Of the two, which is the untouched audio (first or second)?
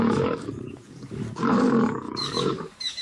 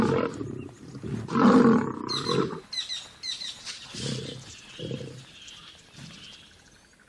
second